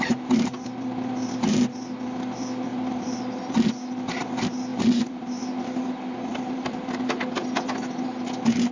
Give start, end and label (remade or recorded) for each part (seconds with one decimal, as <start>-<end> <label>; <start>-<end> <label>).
0.0-2.7 recorded; 2.7-3.7 remade; 3.7-4.7 recorded; 4.7-5.6 remade; 5.6-6.3 recorded; 6.3-7.2 remade; 7.2-8.7 recorded